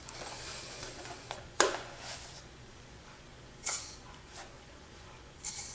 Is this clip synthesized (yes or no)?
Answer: yes